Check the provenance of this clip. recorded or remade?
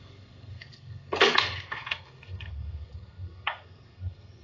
remade